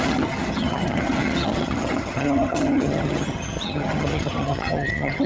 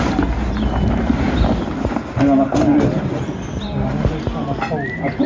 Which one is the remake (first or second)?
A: first